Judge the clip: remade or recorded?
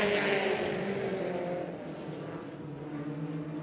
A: recorded